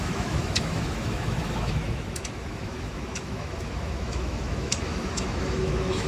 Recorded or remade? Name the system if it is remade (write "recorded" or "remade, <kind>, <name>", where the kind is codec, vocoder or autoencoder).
remade, autoencoder, DAC-VAE